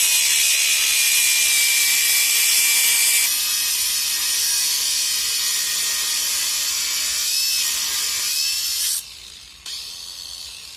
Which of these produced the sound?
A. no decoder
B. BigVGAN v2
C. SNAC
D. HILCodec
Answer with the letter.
A